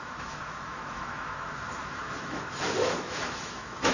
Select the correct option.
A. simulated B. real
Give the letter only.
A